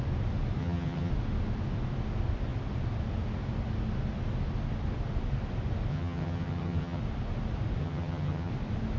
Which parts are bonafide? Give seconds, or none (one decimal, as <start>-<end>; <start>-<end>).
0.0-0.6; 1.1-5.9; 7.0-7.8; 8.5-9.0